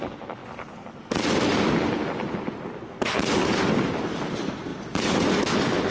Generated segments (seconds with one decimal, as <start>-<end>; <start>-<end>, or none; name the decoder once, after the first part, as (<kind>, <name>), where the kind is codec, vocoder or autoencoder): 4.7-5.9 (vocoder, BigVGAN v2)